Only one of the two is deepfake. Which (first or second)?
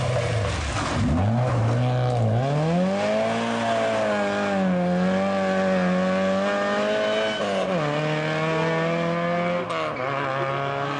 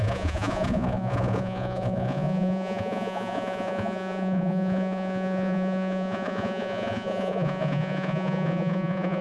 second